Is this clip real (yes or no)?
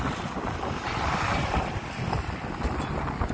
yes